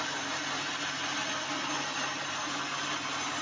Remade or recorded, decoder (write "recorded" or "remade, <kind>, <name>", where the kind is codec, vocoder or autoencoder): recorded